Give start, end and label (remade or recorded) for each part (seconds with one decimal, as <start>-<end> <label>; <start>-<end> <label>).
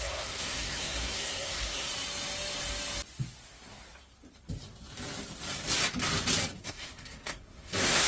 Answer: 0.0-1.9 remade; 1.9-6.6 recorded; 6.6-8.1 remade